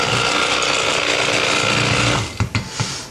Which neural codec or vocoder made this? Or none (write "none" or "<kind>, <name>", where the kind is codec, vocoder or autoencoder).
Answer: none